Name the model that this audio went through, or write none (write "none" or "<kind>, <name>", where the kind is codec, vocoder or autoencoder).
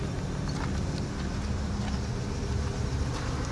none